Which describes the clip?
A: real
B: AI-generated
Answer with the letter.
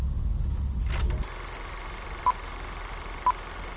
A